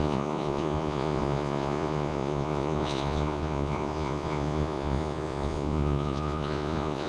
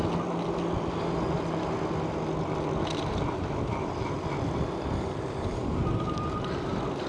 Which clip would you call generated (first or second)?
first